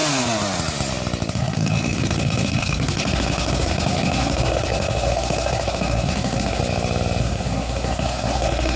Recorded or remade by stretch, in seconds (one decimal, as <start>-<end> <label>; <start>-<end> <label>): 0.0-1.3 recorded; 1.3-6.6 remade; 6.6-7.2 recorded; 7.2-8.8 remade